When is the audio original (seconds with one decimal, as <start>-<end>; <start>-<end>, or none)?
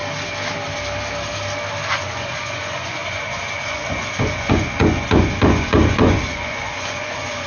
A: 0.0-1.9